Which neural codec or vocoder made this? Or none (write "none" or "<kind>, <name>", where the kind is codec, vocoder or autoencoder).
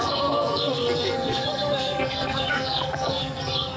codec, SNAC